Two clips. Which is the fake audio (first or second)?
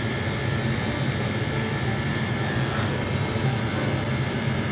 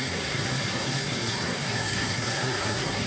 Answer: second